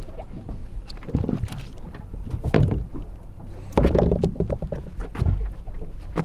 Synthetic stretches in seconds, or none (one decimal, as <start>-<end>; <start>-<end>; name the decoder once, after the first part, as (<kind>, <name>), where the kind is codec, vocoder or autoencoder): 0.6-1.9 (vocoder, BigVGAN v2)